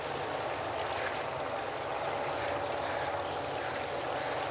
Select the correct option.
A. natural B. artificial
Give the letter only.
A